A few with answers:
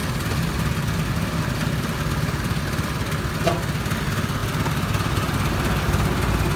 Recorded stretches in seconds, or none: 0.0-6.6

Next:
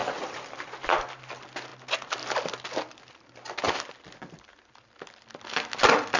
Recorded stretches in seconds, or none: 1.2-6.2

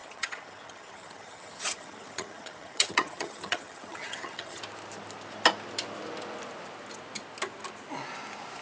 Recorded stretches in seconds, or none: 4.6-8.6

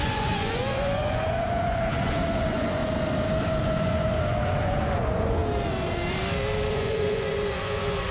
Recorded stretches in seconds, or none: 2.8-3.6; 5.4-6.7

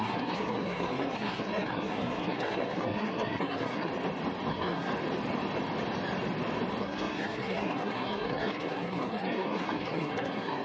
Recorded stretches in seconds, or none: 3.9-4.5; 4.9-6.8

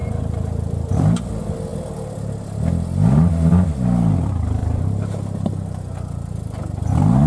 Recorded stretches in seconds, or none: 1.2-4.6; 6.3-7.3